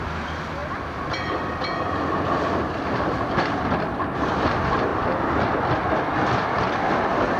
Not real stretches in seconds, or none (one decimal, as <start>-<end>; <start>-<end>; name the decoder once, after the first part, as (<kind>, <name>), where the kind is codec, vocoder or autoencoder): 0.6-4.5 (vocoder, BigVGAN v2); 4.9-5.4